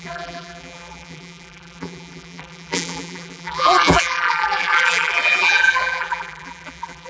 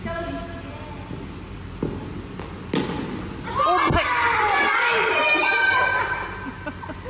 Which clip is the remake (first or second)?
first